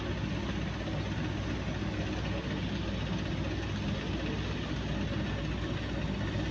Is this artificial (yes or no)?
no